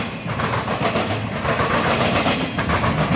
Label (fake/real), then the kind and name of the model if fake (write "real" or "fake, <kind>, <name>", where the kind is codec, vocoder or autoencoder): real